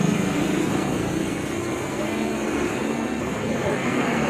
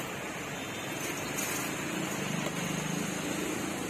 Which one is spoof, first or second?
first